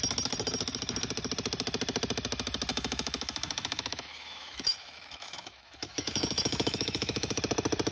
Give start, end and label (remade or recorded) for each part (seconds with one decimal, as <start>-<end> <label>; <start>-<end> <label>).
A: 0.0-2.7 recorded; 2.7-7.4 remade; 7.4-7.9 recorded